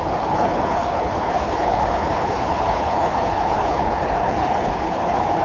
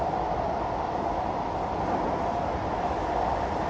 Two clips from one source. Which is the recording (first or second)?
second